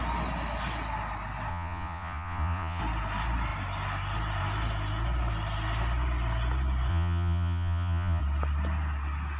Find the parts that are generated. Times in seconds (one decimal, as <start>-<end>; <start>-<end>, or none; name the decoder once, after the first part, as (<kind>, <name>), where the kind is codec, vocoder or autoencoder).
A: 1.5-2.8 (vocoder, Vocos); 6.9-8.2